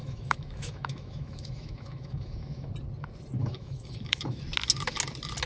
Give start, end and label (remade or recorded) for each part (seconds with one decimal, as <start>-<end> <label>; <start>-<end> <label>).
0.0-2.7 remade; 2.7-3.4 recorded; 3.4-4.4 remade; 4.4-5.5 recorded